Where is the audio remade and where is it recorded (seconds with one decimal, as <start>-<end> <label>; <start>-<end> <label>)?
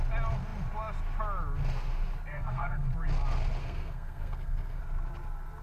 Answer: 0.0-2.3 recorded; 2.3-2.9 remade; 2.9-3.6 recorded; 3.6-4.8 remade; 4.8-5.6 recorded